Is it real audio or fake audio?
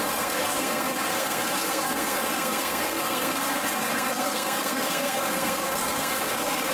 fake